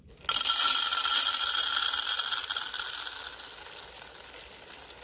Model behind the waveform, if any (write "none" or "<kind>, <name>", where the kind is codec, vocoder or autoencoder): none